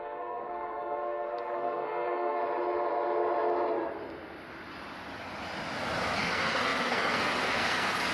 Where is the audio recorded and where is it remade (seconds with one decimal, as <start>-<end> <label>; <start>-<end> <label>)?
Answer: 0.0-2.4 remade; 2.4-6.2 recorded; 6.2-8.1 remade